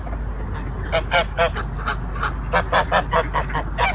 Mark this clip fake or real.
real